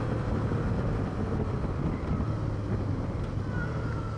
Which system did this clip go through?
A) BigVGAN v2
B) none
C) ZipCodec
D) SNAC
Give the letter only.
B